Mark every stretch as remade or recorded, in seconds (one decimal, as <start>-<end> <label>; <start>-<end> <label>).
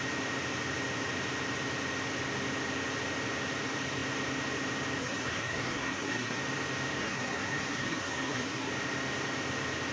0.0-5.0 recorded; 5.0-6.4 remade; 6.4-7.0 recorded; 7.0-8.7 remade; 8.7-9.9 recorded